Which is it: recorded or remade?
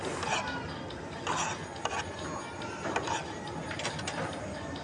recorded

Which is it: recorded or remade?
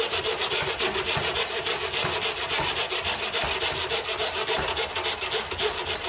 recorded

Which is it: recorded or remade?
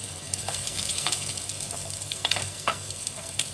remade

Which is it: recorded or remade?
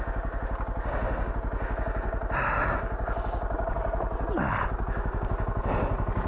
recorded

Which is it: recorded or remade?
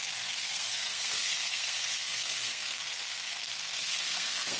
remade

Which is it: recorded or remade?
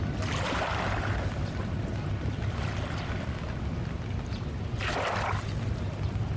recorded